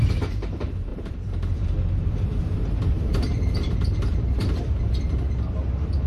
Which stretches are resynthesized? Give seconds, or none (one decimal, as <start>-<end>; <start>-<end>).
0.9-4.6